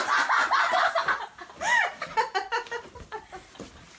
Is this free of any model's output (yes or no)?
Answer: yes